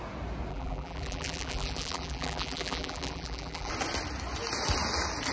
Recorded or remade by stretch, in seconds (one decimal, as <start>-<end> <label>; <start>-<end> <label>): 0.0-0.5 recorded; 0.5-3.7 remade; 3.7-5.3 recorded